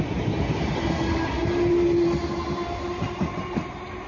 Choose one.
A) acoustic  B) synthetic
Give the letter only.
A